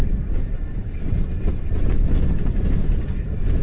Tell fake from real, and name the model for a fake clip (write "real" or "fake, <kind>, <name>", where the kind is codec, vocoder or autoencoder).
real